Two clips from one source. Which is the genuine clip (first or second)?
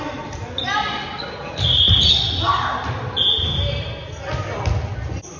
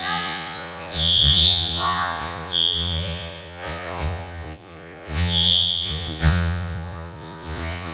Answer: first